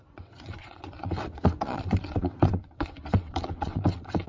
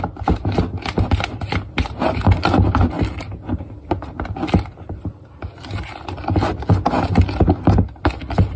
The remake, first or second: first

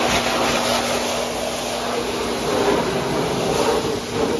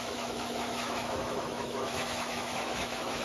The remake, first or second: second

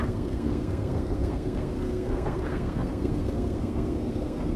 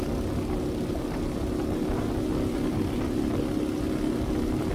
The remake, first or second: first